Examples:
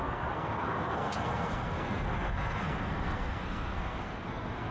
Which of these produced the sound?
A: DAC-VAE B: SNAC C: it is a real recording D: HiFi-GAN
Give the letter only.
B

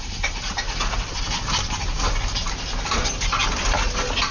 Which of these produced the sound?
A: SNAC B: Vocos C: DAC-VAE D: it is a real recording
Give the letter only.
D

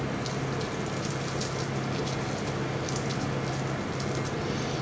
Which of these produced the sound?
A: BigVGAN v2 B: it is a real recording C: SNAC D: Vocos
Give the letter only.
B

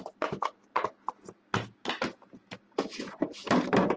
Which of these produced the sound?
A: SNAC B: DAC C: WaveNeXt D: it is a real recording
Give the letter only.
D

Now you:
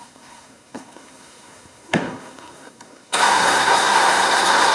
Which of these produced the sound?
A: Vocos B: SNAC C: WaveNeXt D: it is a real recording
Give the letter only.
B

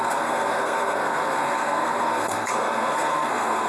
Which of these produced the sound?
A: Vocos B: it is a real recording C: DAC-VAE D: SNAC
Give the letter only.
D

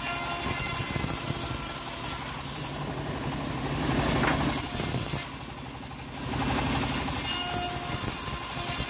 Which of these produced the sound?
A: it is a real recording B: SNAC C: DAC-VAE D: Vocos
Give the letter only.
A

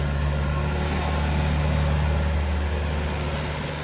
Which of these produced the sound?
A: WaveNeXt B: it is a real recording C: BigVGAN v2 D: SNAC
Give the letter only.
B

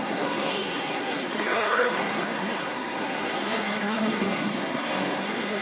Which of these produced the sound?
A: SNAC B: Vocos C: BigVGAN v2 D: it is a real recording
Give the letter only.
A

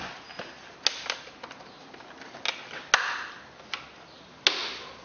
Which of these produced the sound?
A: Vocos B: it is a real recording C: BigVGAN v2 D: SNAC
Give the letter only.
B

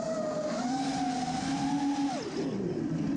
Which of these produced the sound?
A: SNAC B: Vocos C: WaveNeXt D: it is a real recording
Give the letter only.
D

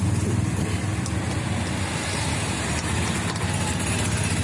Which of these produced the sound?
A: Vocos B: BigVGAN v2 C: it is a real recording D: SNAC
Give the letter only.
C